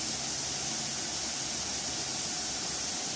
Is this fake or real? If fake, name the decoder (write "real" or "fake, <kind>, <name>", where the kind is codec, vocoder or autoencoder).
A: real